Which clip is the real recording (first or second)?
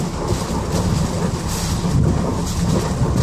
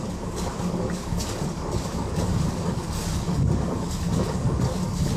first